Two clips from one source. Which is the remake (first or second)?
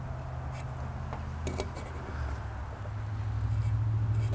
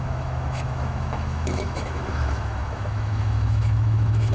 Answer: second